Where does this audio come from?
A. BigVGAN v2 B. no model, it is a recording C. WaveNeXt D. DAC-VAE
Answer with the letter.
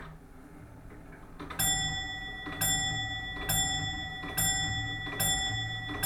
B